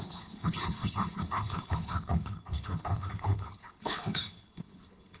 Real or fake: fake